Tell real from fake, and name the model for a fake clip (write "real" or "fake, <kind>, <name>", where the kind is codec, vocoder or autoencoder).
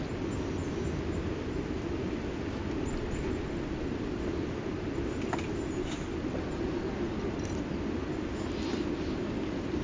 real